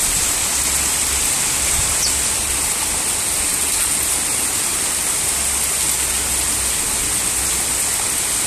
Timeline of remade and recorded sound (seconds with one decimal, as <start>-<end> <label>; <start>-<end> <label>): 0.0-8.5 recorded